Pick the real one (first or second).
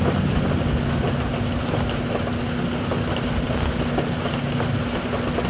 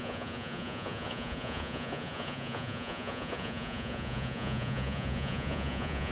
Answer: first